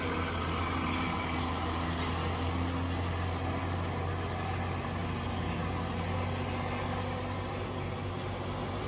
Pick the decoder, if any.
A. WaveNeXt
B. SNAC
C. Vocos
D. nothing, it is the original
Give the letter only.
D